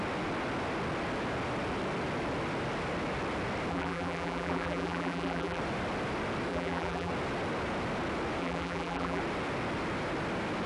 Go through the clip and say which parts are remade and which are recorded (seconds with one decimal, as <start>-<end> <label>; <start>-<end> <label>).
0.0-3.7 recorded; 3.7-5.6 remade; 5.6-6.5 recorded; 6.5-7.1 remade; 7.1-8.4 recorded; 8.4-9.2 remade; 9.2-10.7 recorded